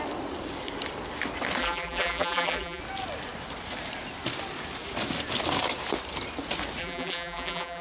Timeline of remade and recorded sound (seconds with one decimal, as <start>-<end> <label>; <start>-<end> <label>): 0.0-1.6 recorded; 1.6-2.8 remade; 2.8-6.8 recorded; 6.8-7.8 remade